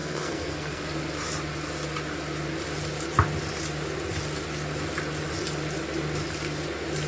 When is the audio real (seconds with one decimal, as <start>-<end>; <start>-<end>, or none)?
0.8-7.1